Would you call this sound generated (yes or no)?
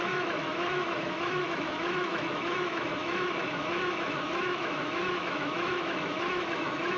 yes